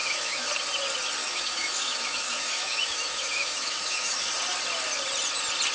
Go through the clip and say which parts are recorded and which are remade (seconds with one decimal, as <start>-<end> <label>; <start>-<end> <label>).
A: 0.0-0.5 remade; 0.5-1.2 recorded; 1.2-4.3 remade; 4.3-5.7 recorded

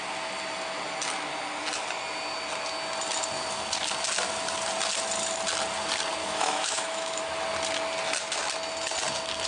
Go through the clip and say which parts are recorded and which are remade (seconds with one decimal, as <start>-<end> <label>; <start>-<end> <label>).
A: 0.0-6.2 recorded; 6.2-7.2 remade; 7.2-9.5 recorded

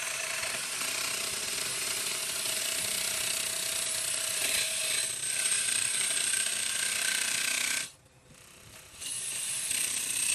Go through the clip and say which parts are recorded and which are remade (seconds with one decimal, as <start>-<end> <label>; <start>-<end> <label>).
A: 0.0-10.3 recorded

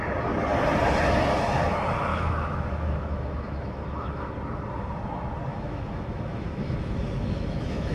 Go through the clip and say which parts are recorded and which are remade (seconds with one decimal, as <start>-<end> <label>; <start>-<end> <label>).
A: 0.0-2.1 recorded; 2.1-4.3 remade; 4.3-5.5 recorded; 5.5-7.9 remade

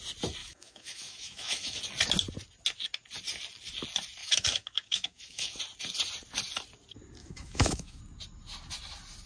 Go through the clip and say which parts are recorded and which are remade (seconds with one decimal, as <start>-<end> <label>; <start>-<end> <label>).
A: 0.0-0.4 recorded; 0.4-1.8 remade; 1.8-4.2 recorded; 4.2-5.6 remade; 5.6-7.2 recorded; 7.2-8.0 remade; 8.0-9.3 recorded